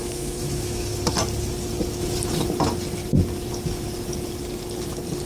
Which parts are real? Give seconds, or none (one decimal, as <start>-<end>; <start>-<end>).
1.0-5.3